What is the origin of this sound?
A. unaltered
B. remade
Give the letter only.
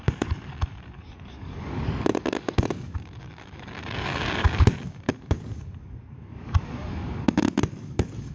B